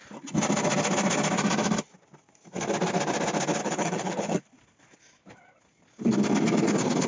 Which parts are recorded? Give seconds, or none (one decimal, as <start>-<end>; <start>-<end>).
0.0-3.6; 4.4-7.1